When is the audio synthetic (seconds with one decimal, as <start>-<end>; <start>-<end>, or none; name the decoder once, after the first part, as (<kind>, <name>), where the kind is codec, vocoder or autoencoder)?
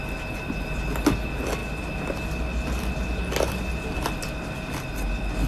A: none